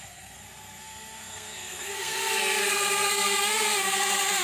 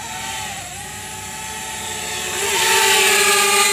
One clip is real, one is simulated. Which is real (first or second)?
second